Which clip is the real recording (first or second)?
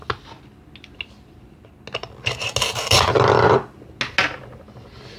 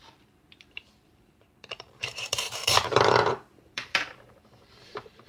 first